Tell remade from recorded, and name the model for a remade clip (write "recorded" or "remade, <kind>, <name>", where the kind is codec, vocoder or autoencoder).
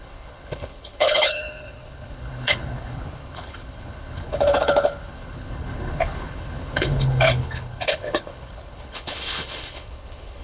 remade, codec, HILCodec